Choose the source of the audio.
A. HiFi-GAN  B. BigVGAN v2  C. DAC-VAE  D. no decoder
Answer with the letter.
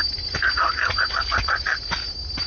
D